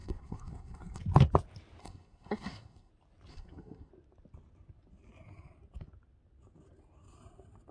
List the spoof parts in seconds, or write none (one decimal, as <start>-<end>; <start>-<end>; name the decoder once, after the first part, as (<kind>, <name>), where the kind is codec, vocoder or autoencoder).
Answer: 0.0-1.0 (codec, SNAC); 1.8-2.9; 3.3-3.9